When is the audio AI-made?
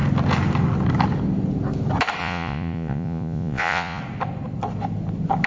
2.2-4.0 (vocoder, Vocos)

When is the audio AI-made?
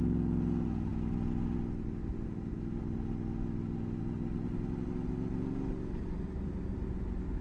none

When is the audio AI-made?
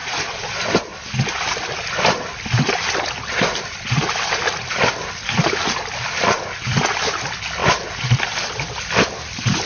0.0-0.6 (vocoder, Vocos)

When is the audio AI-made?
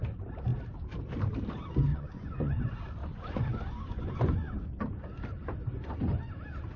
1.9-2.6 (vocoder, Vocos); 3.0-4.7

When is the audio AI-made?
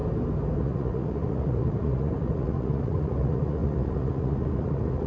0.6-5.1 (vocoder, Vocos)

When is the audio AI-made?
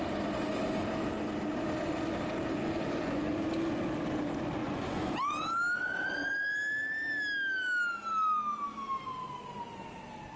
2.6-3.4 (vocoder, Vocos); 4.6-5.1